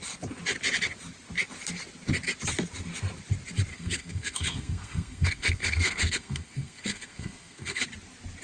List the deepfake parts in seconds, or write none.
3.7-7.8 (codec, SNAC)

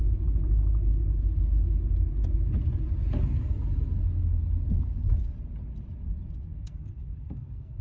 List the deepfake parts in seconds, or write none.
6.5-7.8 (codec, SNAC)

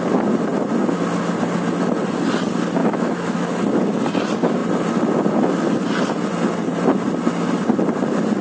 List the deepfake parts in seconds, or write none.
2.8-3.6 (autoencoder, DAC-VAE)

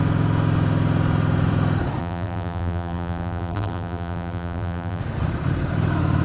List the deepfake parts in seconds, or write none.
2.0-5.0 (vocoder, BigVGAN v2)

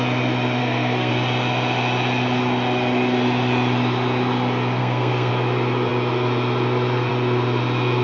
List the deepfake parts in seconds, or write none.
0.6-1.1 (codec, SNAC); 4.8-5.3

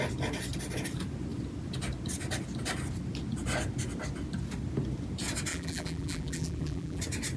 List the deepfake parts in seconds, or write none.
5.5-7.0 (vocoder, BigVGAN v2)

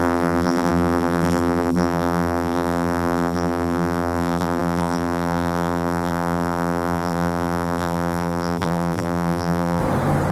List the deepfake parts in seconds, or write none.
0.0-9.8 (vocoder, BigVGAN v2)

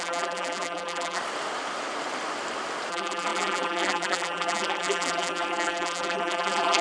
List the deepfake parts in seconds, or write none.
0.0-1.2 (vocoder, BigVGAN v2); 2.9-6.8